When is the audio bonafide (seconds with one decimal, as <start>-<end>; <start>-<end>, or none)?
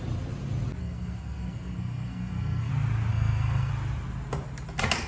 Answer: 0.0-0.8; 2.7-3.1; 3.7-5.1